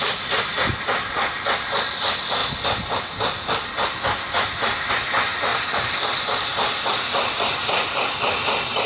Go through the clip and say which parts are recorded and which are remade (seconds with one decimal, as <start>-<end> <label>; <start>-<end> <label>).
0.0-8.9 recorded